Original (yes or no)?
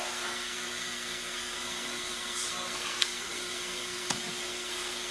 no